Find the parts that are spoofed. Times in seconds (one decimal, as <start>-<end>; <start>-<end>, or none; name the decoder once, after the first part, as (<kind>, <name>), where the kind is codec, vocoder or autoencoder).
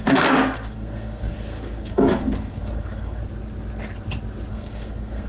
0.0-3.2 (codec, SNAC); 4.5-5.3